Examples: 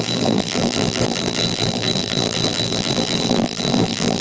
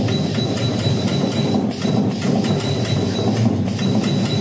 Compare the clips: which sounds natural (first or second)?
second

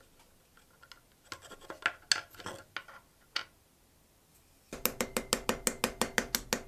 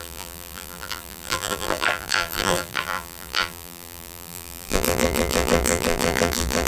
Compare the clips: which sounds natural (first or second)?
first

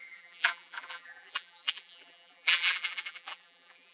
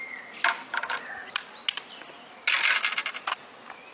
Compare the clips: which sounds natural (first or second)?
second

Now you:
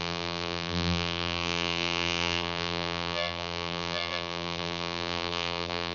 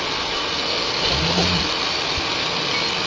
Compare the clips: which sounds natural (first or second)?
second